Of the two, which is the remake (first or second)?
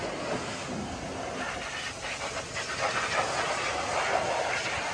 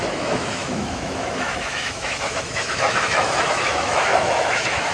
second